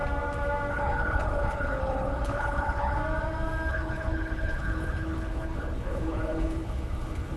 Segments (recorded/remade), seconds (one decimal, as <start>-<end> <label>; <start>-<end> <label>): 0.0-0.7 recorded; 0.7-3.0 remade; 3.0-3.7 recorded; 3.7-7.4 remade